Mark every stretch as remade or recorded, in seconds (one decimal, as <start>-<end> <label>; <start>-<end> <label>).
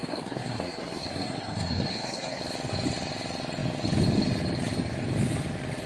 0.0-2.4 remade; 2.4-5.9 recorded